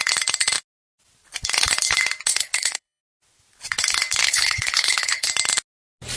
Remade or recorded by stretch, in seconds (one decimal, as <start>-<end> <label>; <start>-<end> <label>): 0.0-2.3 recorded; 2.3-3.0 remade; 3.0-4.2 recorded; 4.2-5.3 remade; 5.3-6.2 recorded